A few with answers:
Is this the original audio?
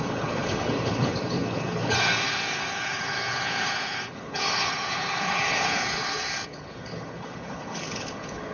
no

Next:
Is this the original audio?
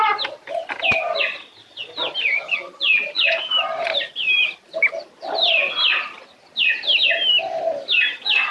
yes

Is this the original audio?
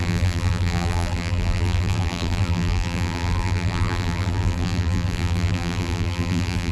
no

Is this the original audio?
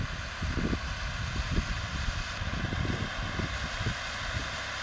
yes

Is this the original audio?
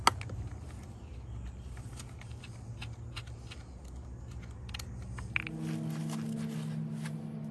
yes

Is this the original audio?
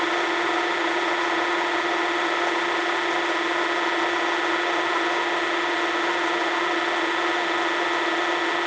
yes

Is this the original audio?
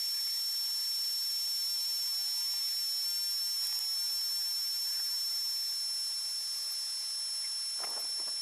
yes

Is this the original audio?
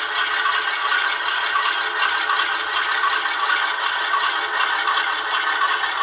yes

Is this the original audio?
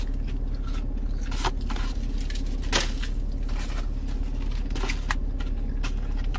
yes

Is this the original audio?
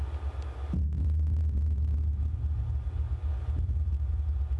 yes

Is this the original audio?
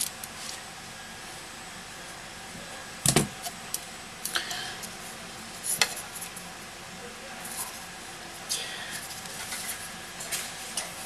yes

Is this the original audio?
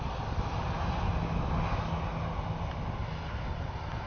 yes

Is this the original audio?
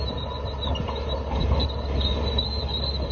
yes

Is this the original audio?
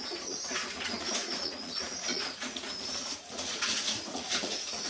no